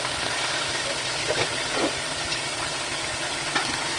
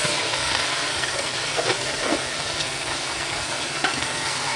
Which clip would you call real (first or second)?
first